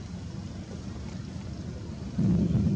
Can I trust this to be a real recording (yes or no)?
yes